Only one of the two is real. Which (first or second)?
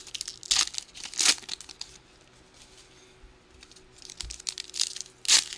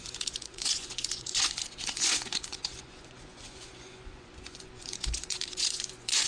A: first